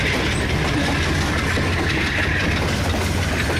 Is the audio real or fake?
real